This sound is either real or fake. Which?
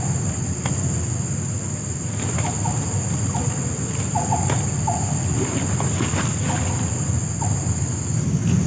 real